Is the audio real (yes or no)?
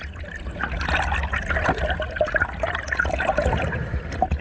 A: yes